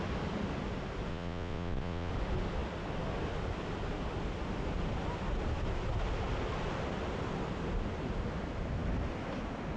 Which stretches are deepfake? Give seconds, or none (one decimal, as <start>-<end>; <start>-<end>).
1.1-2.1